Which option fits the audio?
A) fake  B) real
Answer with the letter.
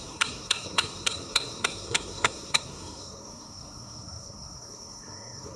A